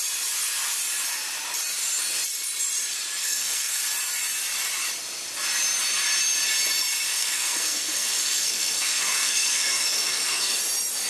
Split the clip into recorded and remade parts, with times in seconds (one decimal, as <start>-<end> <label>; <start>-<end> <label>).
0.0-3.2 recorded; 3.2-3.8 remade; 3.8-7.1 recorded; 7.1-10.6 remade; 10.6-11.1 recorded